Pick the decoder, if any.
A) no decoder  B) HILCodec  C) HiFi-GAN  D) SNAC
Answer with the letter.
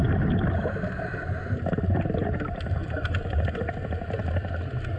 A